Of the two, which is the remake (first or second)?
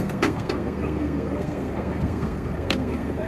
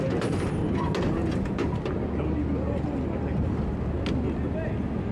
first